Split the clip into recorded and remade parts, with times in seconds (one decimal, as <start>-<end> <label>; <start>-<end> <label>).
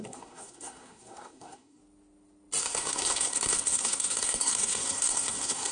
0.0-1.8 remade; 1.8-2.6 recorded; 2.6-5.7 remade